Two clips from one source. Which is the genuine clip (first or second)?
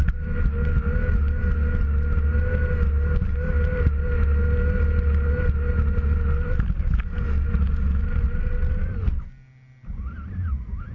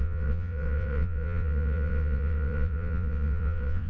first